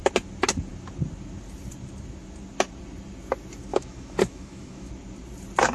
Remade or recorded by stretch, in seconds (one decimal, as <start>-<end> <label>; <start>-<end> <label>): 0.0-3.7 recorded; 3.7-4.9 remade; 4.9-5.7 recorded